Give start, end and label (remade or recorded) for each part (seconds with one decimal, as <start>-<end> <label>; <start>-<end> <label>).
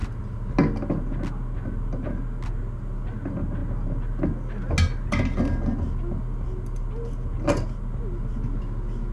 0.0-9.1 recorded